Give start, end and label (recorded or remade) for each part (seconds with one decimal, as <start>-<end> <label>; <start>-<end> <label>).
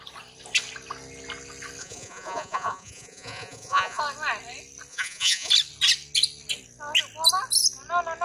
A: 0.0-1.8 recorded; 1.8-4.0 remade; 4.0-4.9 recorded; 4.9-5.5 remade; 5.5-8.2 recorded